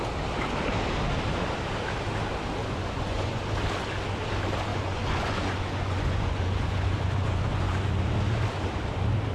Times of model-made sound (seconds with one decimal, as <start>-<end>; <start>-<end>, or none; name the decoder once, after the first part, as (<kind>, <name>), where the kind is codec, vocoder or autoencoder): 2.6-3.4 (vocoder, Vocos); 4.7-7.9